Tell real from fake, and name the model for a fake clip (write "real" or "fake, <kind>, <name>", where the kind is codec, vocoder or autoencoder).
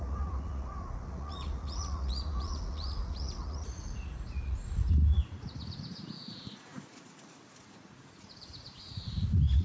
fake, vocoder, Vocos